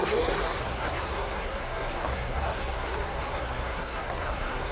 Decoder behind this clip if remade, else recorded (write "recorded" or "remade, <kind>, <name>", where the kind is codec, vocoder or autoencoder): remade, codec, SNAC